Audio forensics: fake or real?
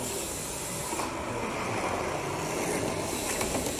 real